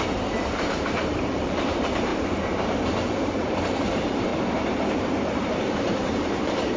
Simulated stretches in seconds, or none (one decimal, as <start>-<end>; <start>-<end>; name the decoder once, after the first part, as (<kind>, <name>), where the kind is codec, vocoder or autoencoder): 0.0-4.3 (vocoder, BigVGAN v2); 4.8-6.8